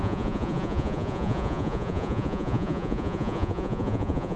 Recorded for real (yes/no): no